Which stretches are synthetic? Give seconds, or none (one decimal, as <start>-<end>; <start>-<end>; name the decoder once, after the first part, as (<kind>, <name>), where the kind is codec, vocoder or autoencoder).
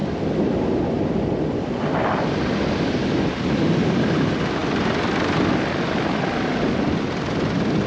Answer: none